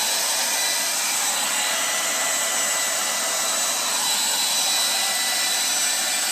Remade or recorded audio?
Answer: recorded